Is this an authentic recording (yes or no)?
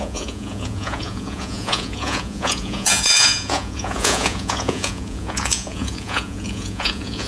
no